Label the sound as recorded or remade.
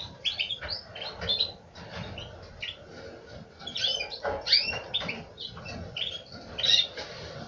recorded